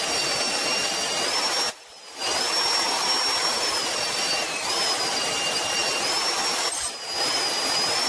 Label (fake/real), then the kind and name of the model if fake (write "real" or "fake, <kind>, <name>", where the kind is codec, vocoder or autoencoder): real